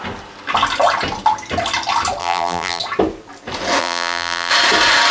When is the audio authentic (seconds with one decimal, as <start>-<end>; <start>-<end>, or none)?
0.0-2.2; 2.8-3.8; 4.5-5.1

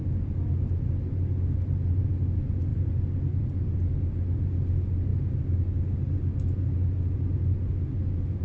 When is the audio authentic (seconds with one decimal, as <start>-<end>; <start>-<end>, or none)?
0.0-8.4

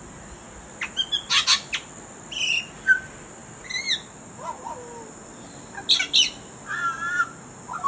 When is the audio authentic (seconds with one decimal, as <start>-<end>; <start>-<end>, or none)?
0.0-7.9

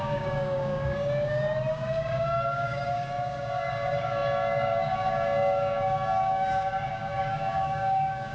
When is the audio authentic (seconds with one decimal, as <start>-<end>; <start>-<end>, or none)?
none

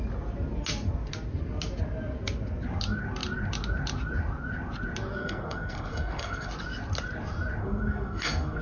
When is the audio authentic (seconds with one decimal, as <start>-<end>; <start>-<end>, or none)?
0.0-5.2; 6.5-7.6

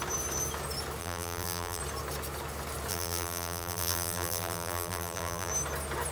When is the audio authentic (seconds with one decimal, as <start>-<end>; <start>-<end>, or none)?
0.0-1.0; 1.8-2.9; 5.5-6.1